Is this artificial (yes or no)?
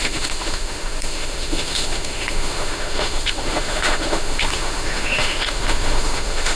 yes